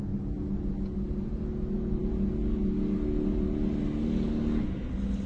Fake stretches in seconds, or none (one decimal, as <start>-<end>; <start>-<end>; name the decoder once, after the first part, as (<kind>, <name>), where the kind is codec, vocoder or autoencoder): none